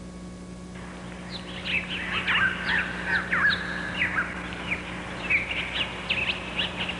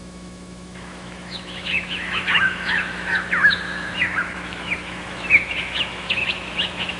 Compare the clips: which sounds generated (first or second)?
second